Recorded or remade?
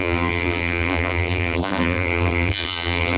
remade